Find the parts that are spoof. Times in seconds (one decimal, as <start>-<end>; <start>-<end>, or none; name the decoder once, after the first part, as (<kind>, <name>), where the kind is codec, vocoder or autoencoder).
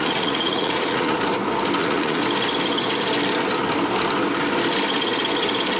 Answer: 0.0-1.2 (vocoder, Vocos); 1.8-2.2